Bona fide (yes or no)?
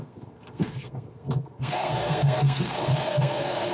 no